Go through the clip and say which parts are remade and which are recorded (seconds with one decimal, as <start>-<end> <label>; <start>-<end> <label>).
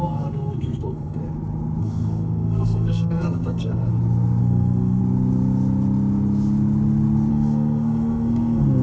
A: 0.0-1.2 remade; 1.2-1.8 recorded; 1.8-3.8 remade; 3.8-4.4 recorded; 4.4-5.0 remade; 5.0-7.3 recorded; 7.3-8.8 remade